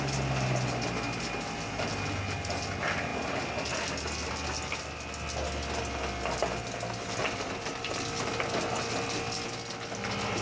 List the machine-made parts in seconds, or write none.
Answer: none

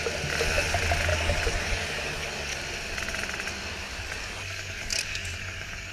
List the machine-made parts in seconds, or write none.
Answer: 1.1-2.6 (codec, DAC); 3.8-5.9

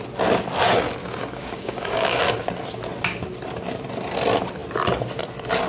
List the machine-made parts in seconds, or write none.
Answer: 1.0-2.2 (codec, DAC)

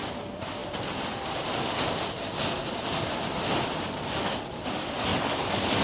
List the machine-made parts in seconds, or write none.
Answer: none